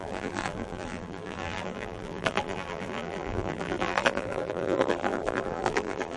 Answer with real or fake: fake